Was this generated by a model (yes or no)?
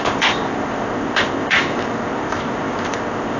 yes